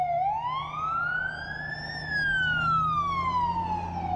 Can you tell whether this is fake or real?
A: real